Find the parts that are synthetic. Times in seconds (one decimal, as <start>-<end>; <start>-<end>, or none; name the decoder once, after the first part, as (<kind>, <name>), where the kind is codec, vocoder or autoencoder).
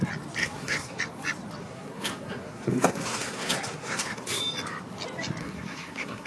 0.4-1.0 (codec, SNAC); 1.6-4.4; 5.4-6.3